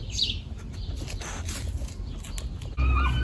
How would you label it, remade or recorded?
recorded